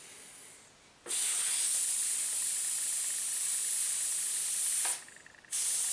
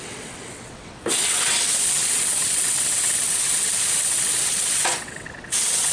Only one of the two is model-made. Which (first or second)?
second